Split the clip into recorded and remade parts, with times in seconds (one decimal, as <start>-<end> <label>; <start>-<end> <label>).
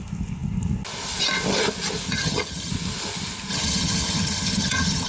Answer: 0.0-2.1 recorded; 2.1-2.7 remade; 2.7-3.5 recorded; 3.5-5.1 remade